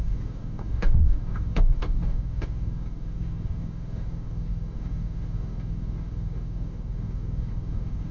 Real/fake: fake